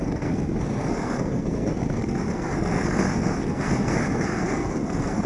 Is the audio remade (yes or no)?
yes